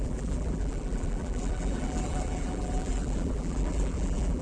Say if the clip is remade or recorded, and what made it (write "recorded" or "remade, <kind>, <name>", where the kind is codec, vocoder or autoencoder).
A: remade, vocoder, BigVGAN v2